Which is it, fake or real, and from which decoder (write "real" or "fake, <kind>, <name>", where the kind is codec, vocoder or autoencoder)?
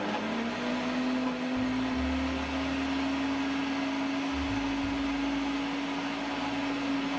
real